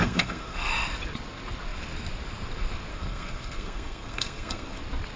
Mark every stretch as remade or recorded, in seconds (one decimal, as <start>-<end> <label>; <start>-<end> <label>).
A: 0.0-0.7 remade; 0.7-2.9 recorded; 2.9-4.8 remade; 4.8-5.2 recorded